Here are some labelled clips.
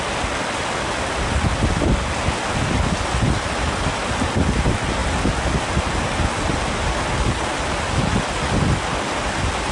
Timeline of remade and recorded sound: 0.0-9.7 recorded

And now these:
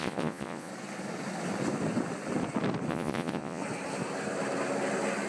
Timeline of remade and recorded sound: 0.0-0.7 remade; 0.7-2.9 recorded; 2.9-3.6 remade; 3.6-5.3 recorded

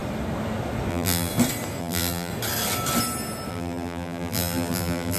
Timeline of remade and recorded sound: 0.0-0.9 recorded; 0.9-1.3 remade; 1.3-1.8 recorded; 1.8-2.3 remade; 2.3-3.5 recorded; 3.5-5.2 remade

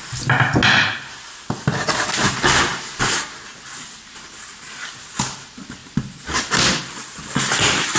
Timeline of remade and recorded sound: 0.0-8.0 recorded